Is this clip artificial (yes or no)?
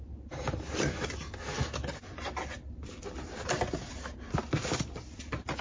no